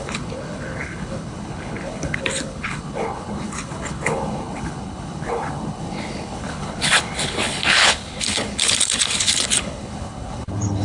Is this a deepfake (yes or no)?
yes